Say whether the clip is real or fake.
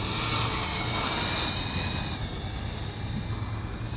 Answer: real